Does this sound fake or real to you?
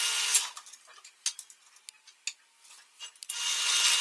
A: real